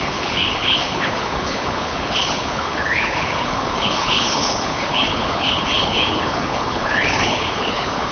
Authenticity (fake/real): fake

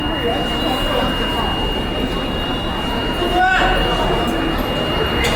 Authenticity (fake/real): real